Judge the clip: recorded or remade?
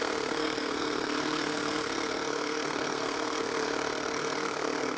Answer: remade